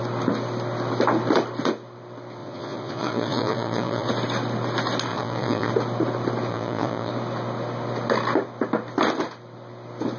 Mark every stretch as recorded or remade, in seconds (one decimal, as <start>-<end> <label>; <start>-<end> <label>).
0.0-2.4 recorded; 2.4-4.1 remade; 4.1-5.1 recorded; 5.1-5.7 remade; 5.7-6.5 recorded; 6.5-7.1 remade; 7.1-10.2 recorded